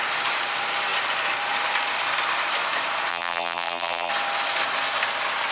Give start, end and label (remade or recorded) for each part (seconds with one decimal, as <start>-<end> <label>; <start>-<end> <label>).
0.0-3.1 recorded; 3.1-4.1 remade; 4.1-5.5 recorded